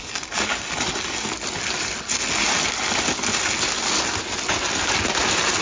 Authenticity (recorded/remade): recorded